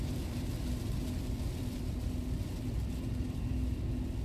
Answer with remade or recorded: remade